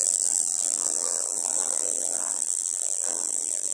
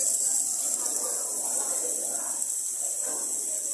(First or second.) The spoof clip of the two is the first